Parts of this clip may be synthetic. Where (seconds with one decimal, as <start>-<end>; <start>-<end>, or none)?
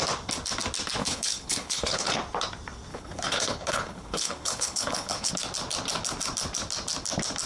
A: 1.0-2.1; 2.9-5.3